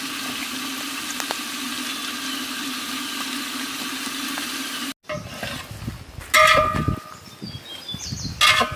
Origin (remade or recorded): recorded